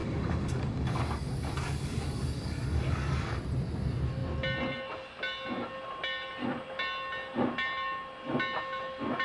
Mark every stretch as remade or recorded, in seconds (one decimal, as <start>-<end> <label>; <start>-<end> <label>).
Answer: 0.0-3.4 remade; 3.4-9.2 recorded